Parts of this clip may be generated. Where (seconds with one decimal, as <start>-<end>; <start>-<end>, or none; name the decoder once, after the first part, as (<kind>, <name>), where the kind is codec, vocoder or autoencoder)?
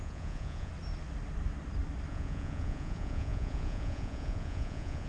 0.0-0.7 (vocoder, Vocos); 2.1-5.1